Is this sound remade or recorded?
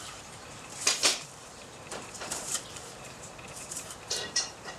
remade